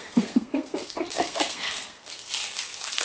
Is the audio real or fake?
fake